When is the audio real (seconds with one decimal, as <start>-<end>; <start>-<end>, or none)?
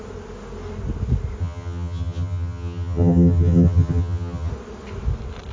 0.0-1.4; 4.5-5.5